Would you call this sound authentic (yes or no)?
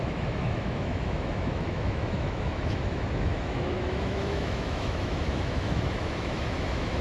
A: no